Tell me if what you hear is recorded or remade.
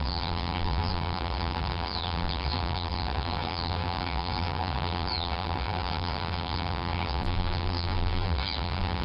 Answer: remade